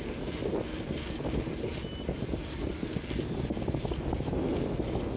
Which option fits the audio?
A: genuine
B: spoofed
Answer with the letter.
A